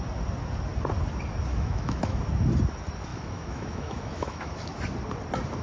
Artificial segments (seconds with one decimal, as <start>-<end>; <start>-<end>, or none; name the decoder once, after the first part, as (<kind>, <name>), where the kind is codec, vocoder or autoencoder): 1.5-2.2 (autoencoder, DAC-VAE); 3.1-4.8